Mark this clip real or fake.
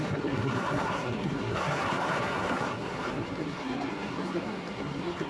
fake